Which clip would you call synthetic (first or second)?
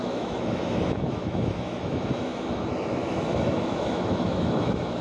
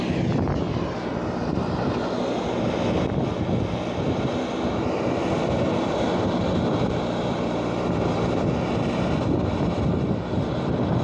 first